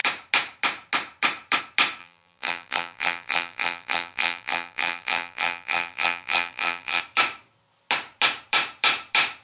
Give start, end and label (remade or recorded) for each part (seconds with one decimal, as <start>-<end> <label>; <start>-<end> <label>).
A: 0.0-2.0 recorded; 2.0-7.0 remade; 7.0-9.4 recorded

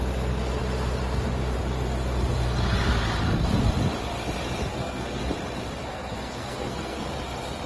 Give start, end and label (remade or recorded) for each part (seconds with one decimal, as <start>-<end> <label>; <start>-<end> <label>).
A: 0.0-4.7 recorded; 4.7-5.2 remade; 5.2-5.9 recorded; 5.9-7.1 remade; 7.1-7.7 recorded

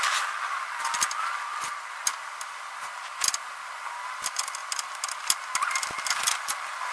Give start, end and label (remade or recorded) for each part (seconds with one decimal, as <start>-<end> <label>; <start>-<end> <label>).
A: 0.0-6.9 recorded

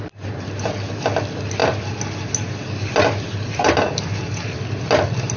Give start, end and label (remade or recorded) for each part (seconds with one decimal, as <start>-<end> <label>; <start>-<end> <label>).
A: 0.0-5.4 recorded

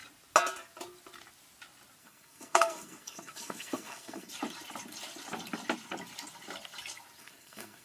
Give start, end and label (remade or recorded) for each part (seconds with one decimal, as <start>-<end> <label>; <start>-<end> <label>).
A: 0.0-2.0 recorded; 2.0-4.3 remade; 4.3-7.2 recorded; 7.2-7.8 remade

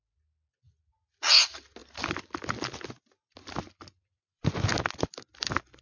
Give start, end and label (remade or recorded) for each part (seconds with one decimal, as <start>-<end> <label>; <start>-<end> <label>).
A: 0.0-5.8 recorded

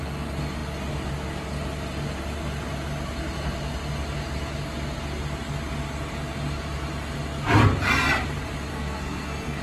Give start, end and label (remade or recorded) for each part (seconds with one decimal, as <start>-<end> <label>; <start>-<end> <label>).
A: 0.0-8.7 recorded; 8.7-9.6 remade

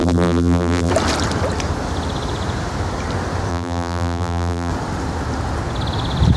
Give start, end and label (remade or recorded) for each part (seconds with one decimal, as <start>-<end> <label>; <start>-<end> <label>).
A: 0.0-0.9 remade; 0.9-3.5 recorded; 3.5-4.7 remade; 4.7-6.4 recorded